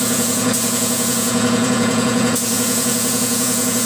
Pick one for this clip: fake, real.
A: fake